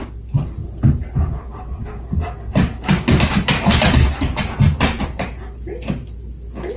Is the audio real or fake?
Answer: real